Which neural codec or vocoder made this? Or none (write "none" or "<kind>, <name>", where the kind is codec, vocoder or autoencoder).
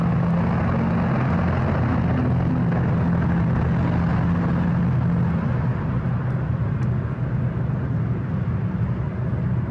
none